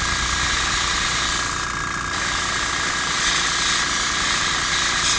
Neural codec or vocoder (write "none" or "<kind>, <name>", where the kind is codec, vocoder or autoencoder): none